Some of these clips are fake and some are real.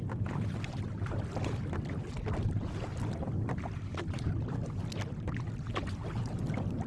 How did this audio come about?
real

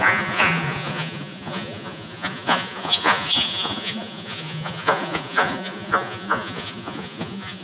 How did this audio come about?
fake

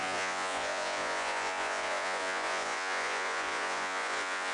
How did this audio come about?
fake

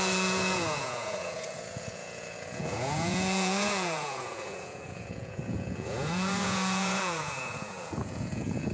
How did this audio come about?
fake